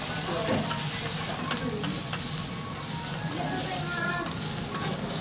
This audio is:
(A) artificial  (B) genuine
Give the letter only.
B